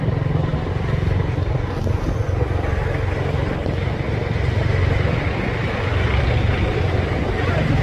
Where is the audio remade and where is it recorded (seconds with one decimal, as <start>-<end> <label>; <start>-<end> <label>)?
0.0-7.8 recorded